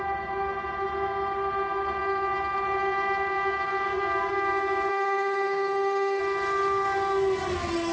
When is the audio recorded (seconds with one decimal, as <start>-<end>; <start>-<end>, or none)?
0.0-4.9; 6.2-7.9